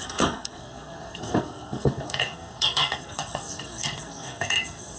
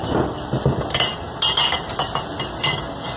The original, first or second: second